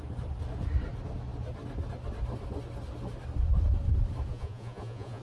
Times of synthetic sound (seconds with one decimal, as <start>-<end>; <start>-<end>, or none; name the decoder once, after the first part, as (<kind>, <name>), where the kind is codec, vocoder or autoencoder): 4.3-5.2 (vocoder, Vocos)